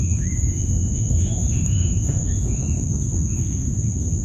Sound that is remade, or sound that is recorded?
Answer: remade